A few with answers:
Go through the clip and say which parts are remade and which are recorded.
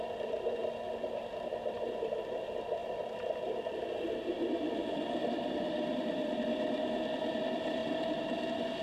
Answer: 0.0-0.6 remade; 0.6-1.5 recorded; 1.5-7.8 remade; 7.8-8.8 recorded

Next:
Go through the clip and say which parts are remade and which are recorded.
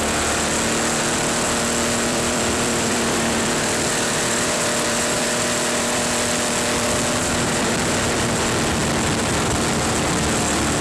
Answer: 0.0-2.1 recorded; 2.1-6.1 remade; 6.1-7.2 recorded; 7.2-7.9 remade; 7.9-10.8 recorded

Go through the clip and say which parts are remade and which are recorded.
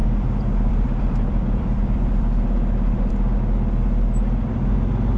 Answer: 0.0-3.1 remade; 3.1-5.2 recorded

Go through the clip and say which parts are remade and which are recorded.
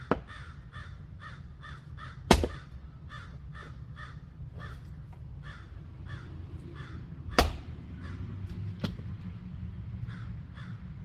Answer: 0.0-6.8 recorded; 6.8-8.3 remade; 8.3-11.0 recorded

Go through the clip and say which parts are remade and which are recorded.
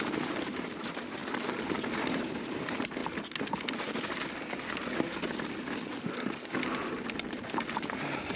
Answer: 0.0-1.2 remade; 1.2-2.1 recorded; 2.1-3.0 remade; 3.0-7.3 recorded; 7.3-8.4 remade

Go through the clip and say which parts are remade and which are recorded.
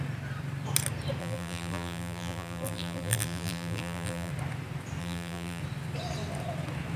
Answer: 0.0-1.2 recorded; 1.2-4.3 remade; 4.3-5.0 recorded; 5.0-5.6 remade; 5.6-7.0 recorded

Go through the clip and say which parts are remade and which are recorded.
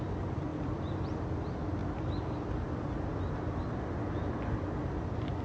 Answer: 0.0-0.5 recorded; 0.5-1.2 remade; 1.2-3.1 recorded; 3.1-3.6 remade; 3.6-5.4 recorded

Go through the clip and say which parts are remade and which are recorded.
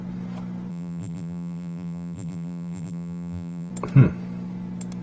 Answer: 0.0-0.7 recorded; 0.7-3.7 remade; 3.7-5.0 recorded